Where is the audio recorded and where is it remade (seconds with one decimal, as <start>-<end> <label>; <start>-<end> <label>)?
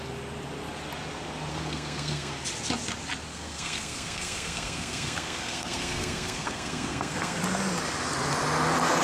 0.0-1.5 recorded; 1.5-2.3 remade; 2.3-3.3 recorded; 3.3-7.4 remade; 7.4-9.0 recorded